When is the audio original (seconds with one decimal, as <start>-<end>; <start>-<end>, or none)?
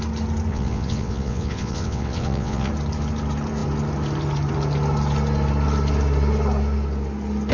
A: 0.0-0.5; 2.7-7.5